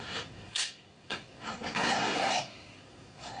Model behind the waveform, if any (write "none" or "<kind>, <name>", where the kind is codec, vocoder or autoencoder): codec, SNAC